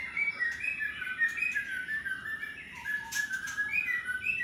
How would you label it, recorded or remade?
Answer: remade